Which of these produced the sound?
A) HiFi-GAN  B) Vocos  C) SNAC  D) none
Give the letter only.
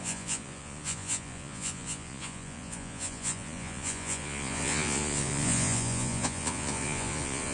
B